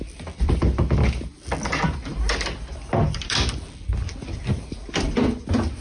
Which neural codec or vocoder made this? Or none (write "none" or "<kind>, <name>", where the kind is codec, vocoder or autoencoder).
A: none